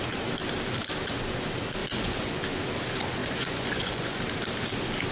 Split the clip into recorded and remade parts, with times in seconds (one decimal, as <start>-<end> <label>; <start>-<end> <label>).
0.0-1.8 recorded; 1.8-2.4 remade; 2.4-3.2 recorded; 3.2-4.2 remade; 4.2-5.1 recorded